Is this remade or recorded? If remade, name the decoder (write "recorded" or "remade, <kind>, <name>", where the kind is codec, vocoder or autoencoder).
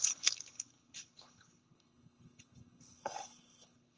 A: remade, codec, HILCodec